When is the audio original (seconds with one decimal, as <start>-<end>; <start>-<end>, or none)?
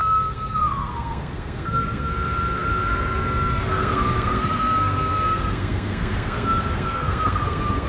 none